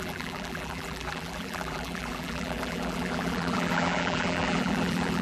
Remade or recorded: remade